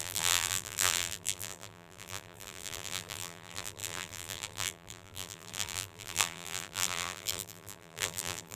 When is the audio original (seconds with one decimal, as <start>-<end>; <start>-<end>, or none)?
none